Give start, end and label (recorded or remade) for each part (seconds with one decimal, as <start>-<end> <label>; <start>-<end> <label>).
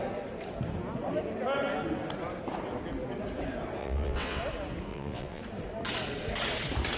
0.0-3.8 recorded; 3.8-4.4 remade; 4.4-4.9 recorded; 4.9-5.4 remade; 5.4-7.0 recorded